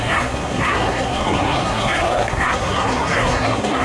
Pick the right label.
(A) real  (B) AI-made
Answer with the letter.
B